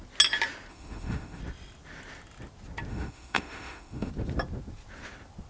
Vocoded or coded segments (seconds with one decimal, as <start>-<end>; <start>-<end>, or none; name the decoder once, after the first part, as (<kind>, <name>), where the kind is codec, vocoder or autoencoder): 0.7-1.4 (autoencoder, DAC-VAE); 2.9-4.1